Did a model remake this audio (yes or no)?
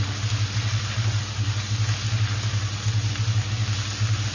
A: no